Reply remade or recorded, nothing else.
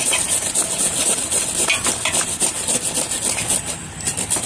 recorded